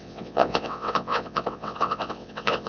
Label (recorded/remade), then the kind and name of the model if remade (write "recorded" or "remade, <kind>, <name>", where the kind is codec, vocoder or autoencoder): remade, vocoder, WaveNeXt